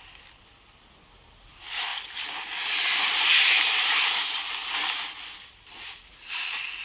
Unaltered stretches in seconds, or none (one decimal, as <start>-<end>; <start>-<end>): 0.0-6.8